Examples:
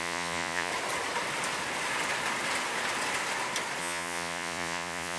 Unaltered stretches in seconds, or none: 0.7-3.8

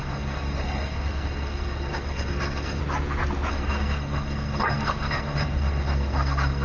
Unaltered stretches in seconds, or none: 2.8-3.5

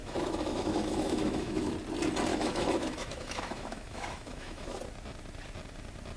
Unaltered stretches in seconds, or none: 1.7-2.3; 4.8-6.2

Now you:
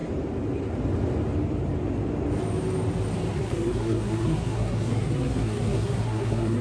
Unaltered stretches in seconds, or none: 0.0-3.3

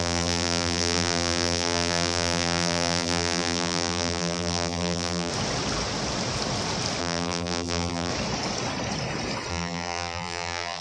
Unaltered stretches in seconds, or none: 5.3-7.0; 8.1-9.5

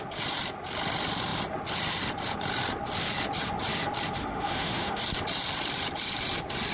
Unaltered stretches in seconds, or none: 0.0-4.2; 5.0-6.7

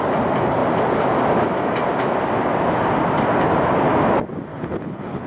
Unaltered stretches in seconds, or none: 0.0-4.5